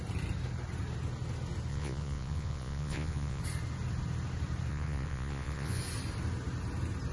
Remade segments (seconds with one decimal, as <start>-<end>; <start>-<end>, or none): 1.7-3.4; 4.7-5.8